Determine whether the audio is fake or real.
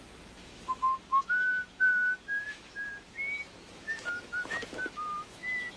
fake